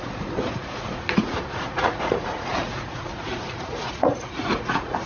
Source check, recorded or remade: remade